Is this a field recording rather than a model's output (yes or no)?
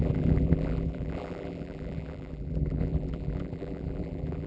no